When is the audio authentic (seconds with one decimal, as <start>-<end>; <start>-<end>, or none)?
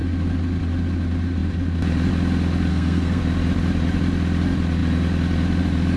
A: 0.0-2.7; 3.2-6.0